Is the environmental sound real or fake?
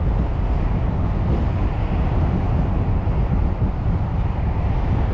real